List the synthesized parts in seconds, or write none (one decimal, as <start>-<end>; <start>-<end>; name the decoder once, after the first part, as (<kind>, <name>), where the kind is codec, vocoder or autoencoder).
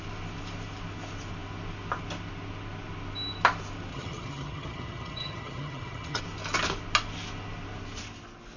3.9-6.2 (vocoder, HiFi-GAN)